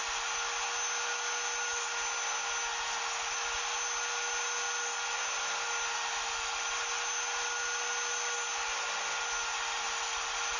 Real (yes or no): yes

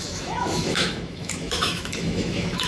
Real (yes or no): no